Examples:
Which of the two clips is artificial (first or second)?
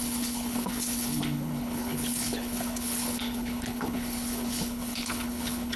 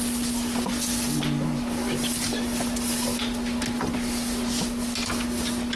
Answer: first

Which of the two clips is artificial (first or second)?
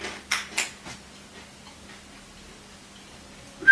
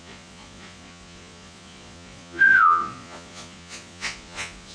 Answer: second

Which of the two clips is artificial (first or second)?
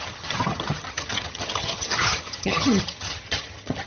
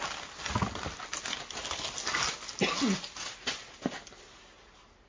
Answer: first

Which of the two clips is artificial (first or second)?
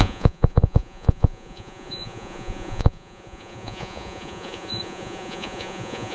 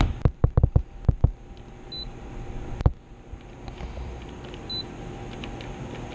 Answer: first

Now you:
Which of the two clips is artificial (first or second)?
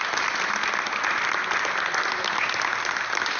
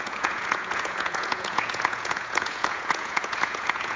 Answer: second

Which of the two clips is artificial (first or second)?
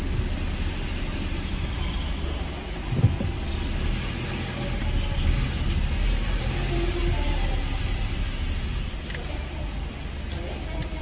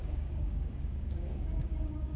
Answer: second